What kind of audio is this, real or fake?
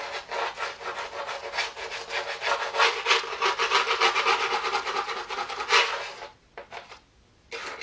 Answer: real